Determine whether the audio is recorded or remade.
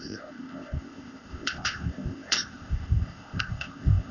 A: remade